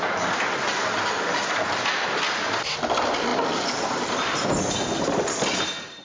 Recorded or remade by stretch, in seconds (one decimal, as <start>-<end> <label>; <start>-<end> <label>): 0.0-6.0 recorded